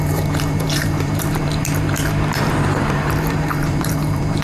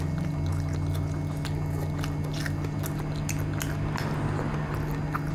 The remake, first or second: first